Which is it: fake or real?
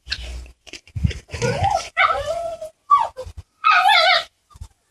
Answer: fake